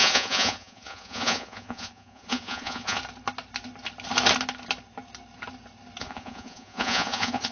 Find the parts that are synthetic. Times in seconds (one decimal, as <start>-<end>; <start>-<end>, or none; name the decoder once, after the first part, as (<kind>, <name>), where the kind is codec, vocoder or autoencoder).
0.0-3.0 (vocoder, Vocos); 6.0-7.5